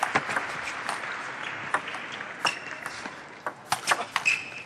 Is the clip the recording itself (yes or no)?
yes